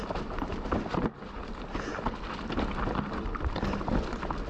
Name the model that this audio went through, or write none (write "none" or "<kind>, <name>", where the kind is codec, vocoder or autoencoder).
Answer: none